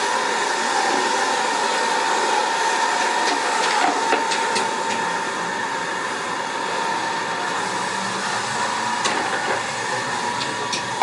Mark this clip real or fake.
real